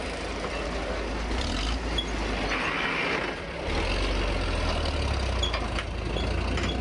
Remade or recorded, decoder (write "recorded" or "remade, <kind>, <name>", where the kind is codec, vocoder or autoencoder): recorded